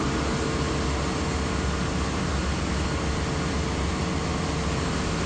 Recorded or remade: recorded